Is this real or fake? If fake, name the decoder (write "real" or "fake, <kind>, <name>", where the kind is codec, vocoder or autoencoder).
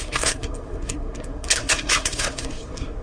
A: fake, codec, SNAC